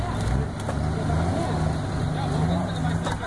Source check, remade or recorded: recorded